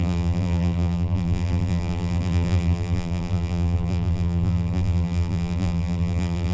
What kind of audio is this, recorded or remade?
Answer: remade